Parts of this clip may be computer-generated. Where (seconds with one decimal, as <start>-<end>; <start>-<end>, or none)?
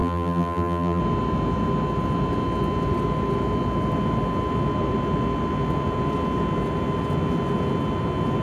0.0-1.0